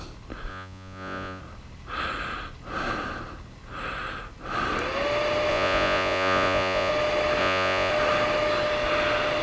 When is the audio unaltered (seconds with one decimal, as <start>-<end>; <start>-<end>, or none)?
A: 0.0-0.5; 1.4-5.5; 6.9-7.4; 7.9-9.4